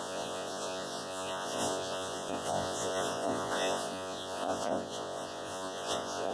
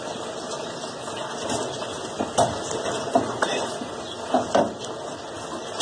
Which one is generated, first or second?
first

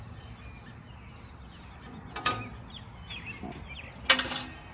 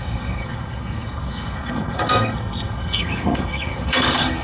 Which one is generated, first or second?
second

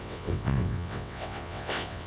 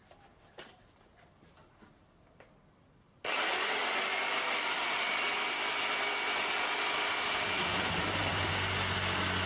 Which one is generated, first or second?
first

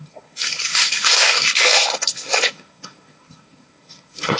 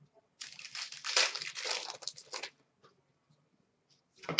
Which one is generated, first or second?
first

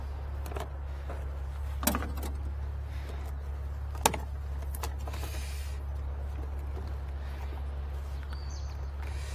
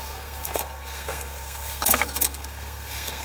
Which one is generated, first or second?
second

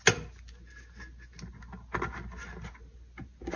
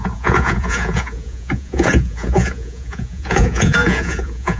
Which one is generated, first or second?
second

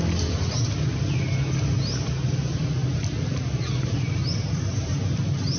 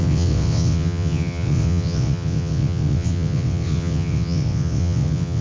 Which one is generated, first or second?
second